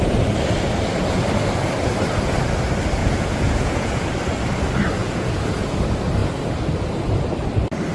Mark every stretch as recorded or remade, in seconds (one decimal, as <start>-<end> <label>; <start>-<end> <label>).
0.0-3.0 recorded; 3.0-4.0 remade; 4.0-5.0 recorded; 5.0-5.6 remade; 5.6-7.9 recorded